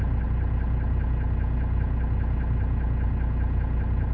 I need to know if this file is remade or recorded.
recorded